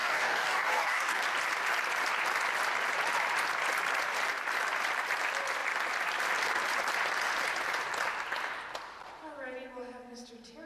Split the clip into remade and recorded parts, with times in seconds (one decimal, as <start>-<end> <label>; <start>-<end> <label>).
0.0-1.2 remade; 1.2-10.7 recorded